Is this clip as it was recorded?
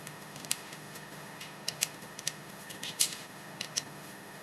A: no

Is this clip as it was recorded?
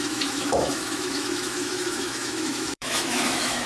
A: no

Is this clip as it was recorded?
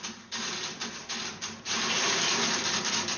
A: yes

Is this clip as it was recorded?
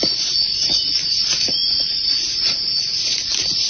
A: no